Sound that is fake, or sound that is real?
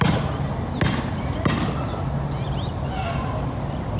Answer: real